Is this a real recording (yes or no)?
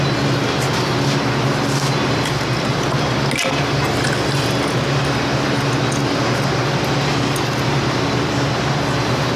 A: yes